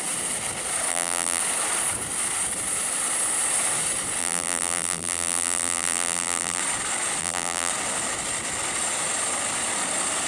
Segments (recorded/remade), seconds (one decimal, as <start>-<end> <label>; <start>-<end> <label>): 0.0-0.9 recorded; 0.9-1.4 remade; 1.4-4.2 recorded; 4.2-6.6 remade; 6.6-7.2 recorded; 7.2-7.7 remade; 7.7-10.3 recorded